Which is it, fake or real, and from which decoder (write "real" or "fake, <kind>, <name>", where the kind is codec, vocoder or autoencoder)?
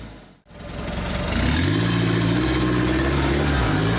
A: real